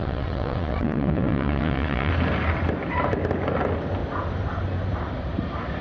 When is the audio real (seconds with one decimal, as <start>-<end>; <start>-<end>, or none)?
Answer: 2.1-5.8